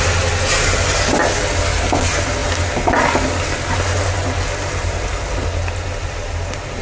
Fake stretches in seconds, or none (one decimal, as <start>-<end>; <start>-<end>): none